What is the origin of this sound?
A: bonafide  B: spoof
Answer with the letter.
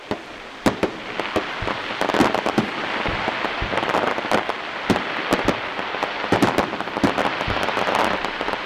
A